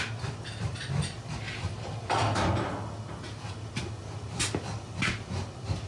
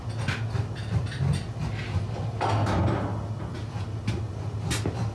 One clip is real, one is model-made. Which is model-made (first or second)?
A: first